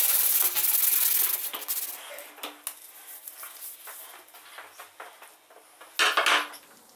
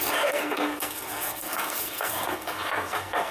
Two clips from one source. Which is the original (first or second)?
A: first